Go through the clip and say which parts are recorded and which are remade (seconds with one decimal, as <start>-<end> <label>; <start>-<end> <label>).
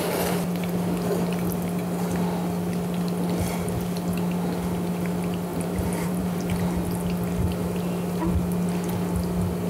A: 0.0-5.5 recorded; 5.5-6.4 remade; 6.4-9.7 recorded